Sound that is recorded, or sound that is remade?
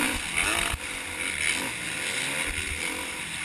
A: recorded